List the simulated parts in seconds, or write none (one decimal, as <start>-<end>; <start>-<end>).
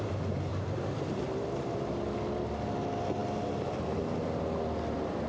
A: 0.5-1.8